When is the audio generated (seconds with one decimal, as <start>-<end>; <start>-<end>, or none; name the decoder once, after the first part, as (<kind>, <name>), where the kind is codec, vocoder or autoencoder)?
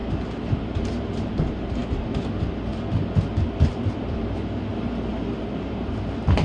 0.5-1.8 (vocoder, BigVGAN v2); 4.0-4.7; 5.4-6.4